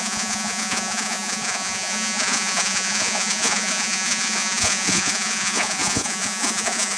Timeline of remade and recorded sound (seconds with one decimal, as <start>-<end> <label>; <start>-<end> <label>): 0.0-7.0 remade